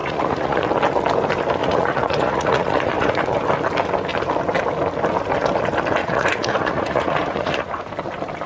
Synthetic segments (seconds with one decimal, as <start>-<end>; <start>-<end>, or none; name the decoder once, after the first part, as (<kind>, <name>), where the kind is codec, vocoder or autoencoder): 0.0-0.7 (vocoder, Vocos); 1.6-3.2; 6.0-7.9